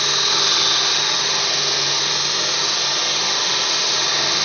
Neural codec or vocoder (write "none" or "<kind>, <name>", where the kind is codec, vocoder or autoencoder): none